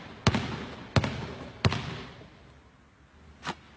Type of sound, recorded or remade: recorded